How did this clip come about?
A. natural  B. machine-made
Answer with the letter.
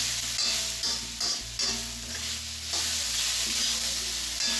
A